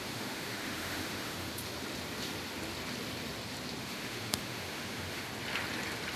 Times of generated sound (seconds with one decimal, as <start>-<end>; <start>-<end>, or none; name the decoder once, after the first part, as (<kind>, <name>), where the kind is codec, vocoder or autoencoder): 0.0-1.5 (autoencoder, DAC-VAE); 3.8-5.3

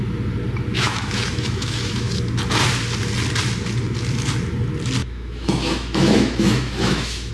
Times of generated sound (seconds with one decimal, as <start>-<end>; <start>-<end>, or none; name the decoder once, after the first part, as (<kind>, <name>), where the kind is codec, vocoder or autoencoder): 0.7-2.2 (autoencoder, DAC-VAE); 5.0-7.3